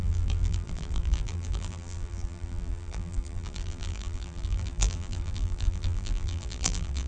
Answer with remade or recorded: remade